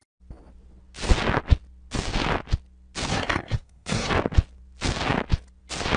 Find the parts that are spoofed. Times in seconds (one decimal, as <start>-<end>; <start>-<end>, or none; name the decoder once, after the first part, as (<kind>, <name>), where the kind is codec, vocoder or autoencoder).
3.1-4.1 (codec, SNAC)